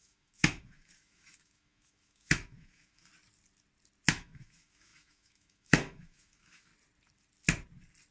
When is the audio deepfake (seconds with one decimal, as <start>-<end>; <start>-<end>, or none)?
0.0-3.1; 4.1-6.7